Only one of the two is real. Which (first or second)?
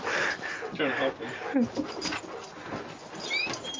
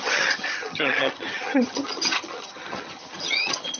first